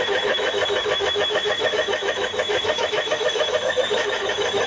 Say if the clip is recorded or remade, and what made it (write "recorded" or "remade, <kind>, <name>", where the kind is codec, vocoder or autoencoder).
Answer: remade, autoencoder, DAC-VAE